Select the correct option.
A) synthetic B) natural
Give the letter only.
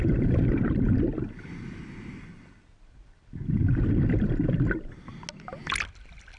B